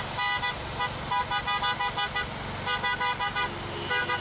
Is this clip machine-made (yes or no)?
no